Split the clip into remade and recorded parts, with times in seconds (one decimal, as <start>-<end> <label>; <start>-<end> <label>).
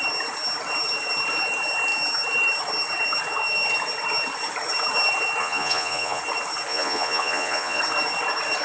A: 0.0-5.4 recorded; 5.4-6.2 remade; 6.2-6.7 recorded; 6.7-7.8 remade; 7.8-8.6 recorded